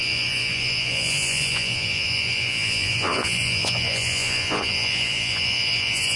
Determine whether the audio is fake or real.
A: fake